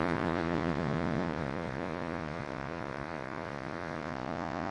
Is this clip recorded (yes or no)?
no